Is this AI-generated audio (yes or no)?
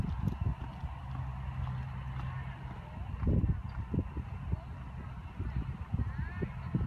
no